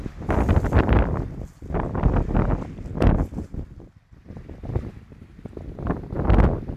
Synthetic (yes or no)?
no